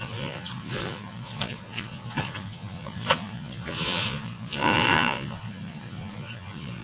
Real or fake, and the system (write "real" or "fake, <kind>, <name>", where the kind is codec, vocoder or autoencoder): fake, vocoder, Vocos